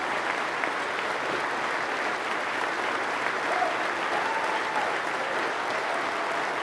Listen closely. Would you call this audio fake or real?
real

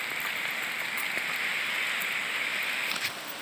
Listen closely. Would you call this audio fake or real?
real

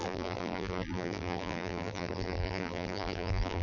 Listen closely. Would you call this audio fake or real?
fake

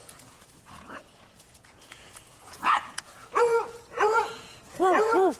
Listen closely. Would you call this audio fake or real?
fake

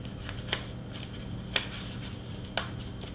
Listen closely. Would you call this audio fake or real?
real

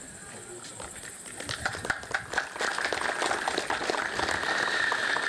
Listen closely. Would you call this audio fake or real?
real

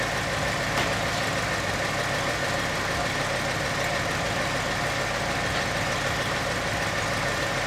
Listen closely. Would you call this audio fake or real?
real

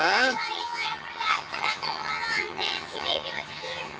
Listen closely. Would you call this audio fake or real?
fake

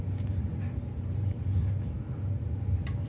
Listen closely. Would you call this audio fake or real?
real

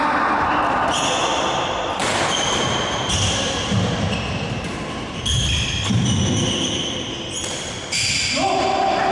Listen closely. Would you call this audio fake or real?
real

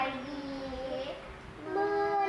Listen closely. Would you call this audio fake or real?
real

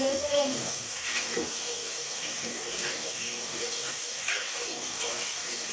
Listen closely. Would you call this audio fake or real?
fake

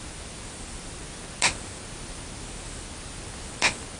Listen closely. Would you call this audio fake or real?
real